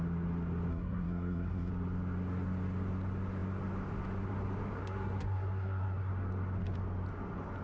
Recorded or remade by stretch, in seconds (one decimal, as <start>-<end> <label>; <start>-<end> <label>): 0.0-0.7 recorded; 0.7-1.7 remade; 1.7-4.8 recorded; 4.8-6.1 remade; 6.1-7.6 recorded